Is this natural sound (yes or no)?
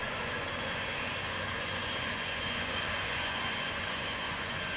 no